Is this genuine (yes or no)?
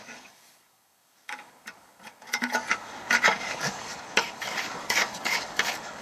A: no